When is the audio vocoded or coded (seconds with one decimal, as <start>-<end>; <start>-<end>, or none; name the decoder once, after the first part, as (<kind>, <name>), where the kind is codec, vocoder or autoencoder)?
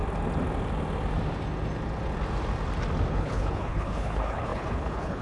3.1-5.2 (codec, HILCodec)